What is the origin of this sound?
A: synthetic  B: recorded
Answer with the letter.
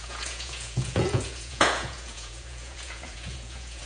A